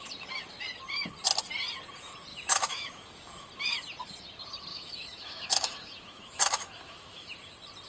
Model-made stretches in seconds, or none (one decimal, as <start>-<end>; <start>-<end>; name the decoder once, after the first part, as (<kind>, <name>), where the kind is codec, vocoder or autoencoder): 2.3-3.5 (autoencoder, DAC-VAE); 4.7-7.3